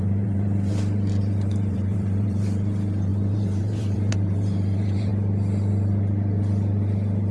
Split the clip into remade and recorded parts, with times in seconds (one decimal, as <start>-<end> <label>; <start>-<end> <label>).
0.0-5.1 remade; 5.1-7.3 recorded

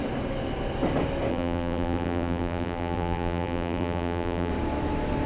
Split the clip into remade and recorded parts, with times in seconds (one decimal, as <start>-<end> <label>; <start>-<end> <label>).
0.0-1.3 recorded; 1.3-4.5 remade; 4.5-5.3 recorded

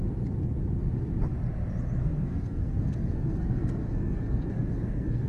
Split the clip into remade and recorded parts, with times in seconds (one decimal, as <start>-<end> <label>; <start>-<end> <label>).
0.0-2.0 recorded; 2.0-5.3 remade

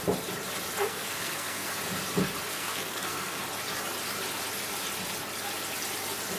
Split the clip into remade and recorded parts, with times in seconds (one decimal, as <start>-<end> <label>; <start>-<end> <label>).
0.0-0.8 recorded; 0.8-1.7 remade; 1.7-2.5 recorded; 2.5-3.4 remade; 3.4-6.4 recorded

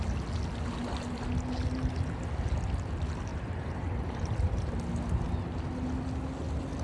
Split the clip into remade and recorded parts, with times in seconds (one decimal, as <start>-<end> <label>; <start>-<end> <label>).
0.0-3.3 recorded; 3.3-4.7 remade; 4.7-6.8 recorded

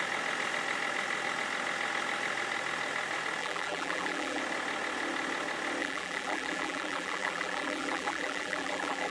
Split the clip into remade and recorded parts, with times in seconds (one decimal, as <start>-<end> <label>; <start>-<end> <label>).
0.0-3.4 recorded; 3.4-4.4 remade; 4.4-5.8 recorded; 5.8-9.1 remade

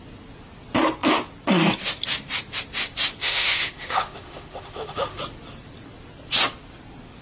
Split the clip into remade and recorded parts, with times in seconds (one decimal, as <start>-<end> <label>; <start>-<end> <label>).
0.0-3.2 recorded; 3.2-5.2 remade; 5.2-7.2 recorded

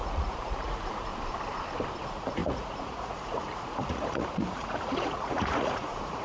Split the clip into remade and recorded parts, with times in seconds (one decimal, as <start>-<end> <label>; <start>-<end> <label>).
0.0-1.1 remade; 1.1-2.0 recorded; 2.0-6.2 remade